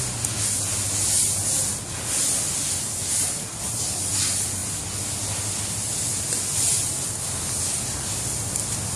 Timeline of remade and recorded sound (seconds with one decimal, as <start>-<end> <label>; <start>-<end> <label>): 0.0-9.0 recorded